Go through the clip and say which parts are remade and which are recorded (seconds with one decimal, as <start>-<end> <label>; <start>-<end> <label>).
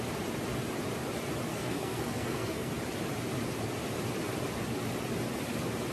0.0-1.5 recorded; 1.5-2.7 remade; 2.7-5.9 recorded